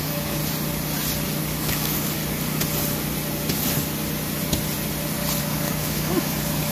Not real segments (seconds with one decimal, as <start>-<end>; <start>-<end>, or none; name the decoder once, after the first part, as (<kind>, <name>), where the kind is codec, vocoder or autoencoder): 0.0-0.4 (codec, DAC); 1.4-2.2; 5.4-6.7